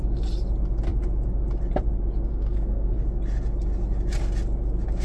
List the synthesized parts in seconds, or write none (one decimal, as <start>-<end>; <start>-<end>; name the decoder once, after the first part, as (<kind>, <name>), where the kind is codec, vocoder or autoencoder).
2.3-2.9 (codec, SNAC)